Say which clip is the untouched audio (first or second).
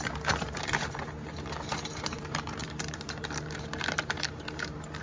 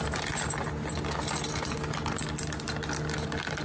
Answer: second